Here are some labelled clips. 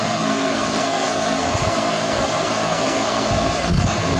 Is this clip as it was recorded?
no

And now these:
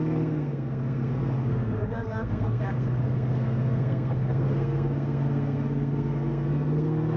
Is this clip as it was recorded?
no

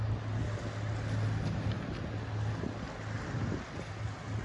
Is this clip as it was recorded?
yes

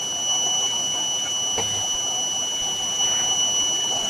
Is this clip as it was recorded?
yes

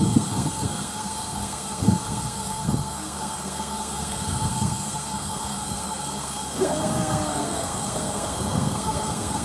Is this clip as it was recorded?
no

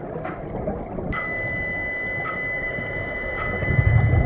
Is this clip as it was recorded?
yes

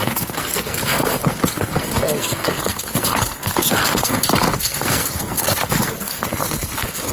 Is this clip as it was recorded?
no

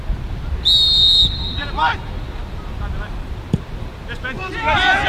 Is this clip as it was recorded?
yes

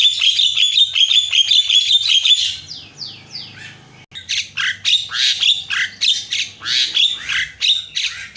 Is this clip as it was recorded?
yes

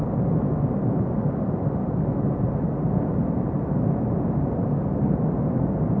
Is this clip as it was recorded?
yes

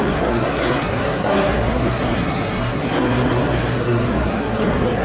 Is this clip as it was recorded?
no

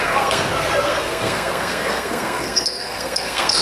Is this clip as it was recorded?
no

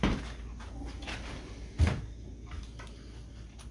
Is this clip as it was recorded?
yes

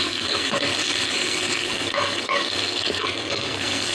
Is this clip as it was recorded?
no